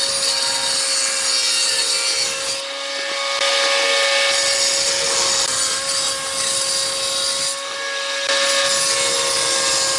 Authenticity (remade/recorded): recorded